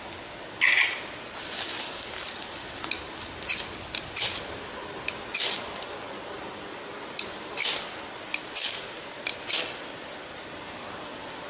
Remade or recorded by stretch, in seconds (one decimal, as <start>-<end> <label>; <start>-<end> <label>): 0.0-11.5 recorded